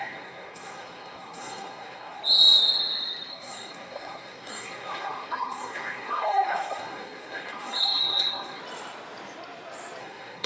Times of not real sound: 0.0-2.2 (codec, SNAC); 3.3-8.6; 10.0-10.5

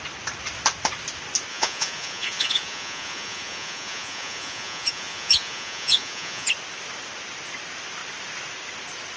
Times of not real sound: 1.5-6.5 (vocoder, Vocos)

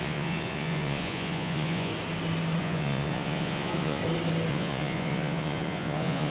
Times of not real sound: 0.0-1.9 (vocoder, Vocos); 2.6-4.0; 4.5-6.3

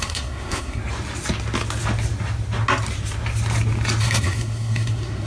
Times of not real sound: 0.0-0.8 (codec, SNAC); 4.0-5.3

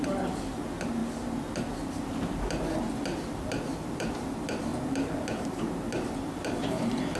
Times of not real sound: none

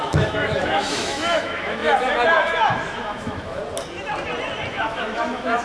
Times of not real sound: 0.0-3.6 (autoencoder, DAC-VAE); 4.7-5.6